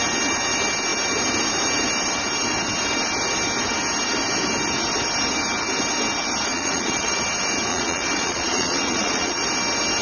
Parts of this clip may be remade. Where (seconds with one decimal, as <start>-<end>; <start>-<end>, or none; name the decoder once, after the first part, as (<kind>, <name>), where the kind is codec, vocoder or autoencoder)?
6.5-7.2 (vocoder, Vocos); 7.7-9.4